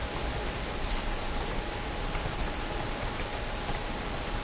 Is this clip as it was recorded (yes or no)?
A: yes